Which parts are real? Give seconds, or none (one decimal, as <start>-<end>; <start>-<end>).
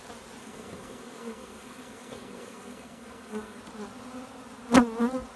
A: 0.0-0.4; 3.6-5.4